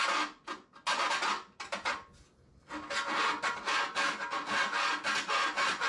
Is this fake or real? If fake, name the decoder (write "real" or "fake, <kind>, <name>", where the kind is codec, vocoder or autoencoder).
real